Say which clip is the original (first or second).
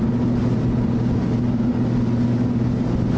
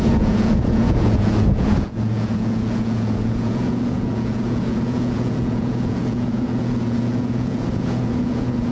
first